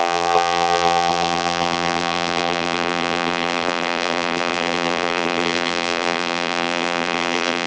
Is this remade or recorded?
remade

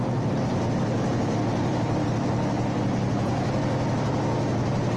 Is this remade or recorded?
recorded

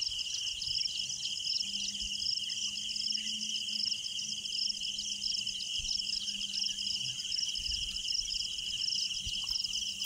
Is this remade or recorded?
recorded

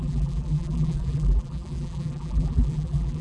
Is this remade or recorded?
remade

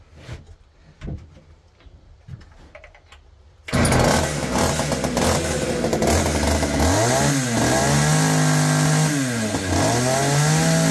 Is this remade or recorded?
recorded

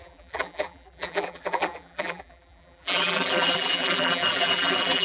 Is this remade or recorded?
remade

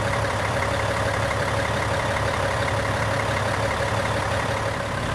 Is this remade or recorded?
remade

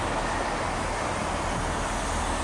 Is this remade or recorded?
recorded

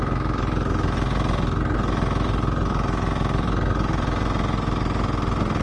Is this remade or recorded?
recorded